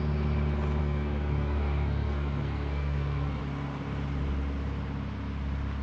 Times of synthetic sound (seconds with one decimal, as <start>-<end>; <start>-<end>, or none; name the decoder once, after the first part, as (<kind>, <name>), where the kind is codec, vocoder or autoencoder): 0.8-3.4 (codec, SNAC)